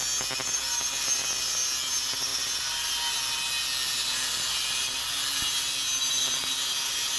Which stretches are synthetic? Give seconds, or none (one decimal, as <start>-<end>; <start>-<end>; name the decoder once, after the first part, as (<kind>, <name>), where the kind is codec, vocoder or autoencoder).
none